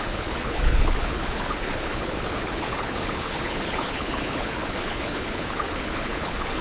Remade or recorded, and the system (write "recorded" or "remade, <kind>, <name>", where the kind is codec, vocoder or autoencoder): remade, codec, HILCodec